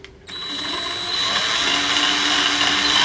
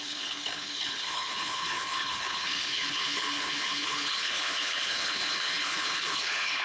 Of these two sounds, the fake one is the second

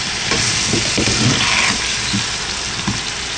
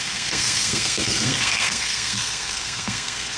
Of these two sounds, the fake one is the second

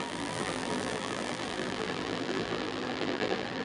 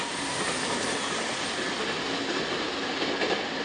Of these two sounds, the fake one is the first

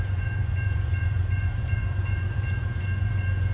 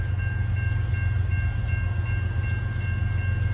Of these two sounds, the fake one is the first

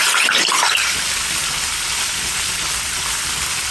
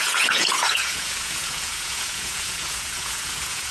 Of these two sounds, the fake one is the second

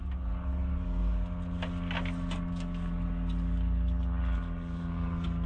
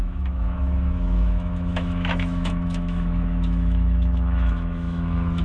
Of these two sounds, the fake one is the second